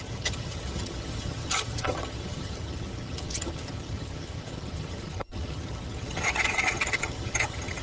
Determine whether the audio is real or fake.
fake